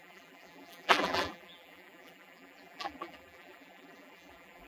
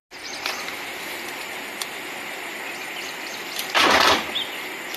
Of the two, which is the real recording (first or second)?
second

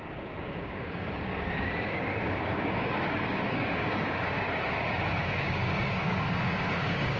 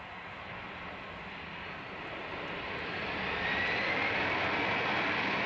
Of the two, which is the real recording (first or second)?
second